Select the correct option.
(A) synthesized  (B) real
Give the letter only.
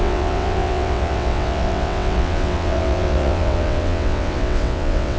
A